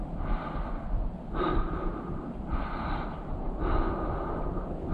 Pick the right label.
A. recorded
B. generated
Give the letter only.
A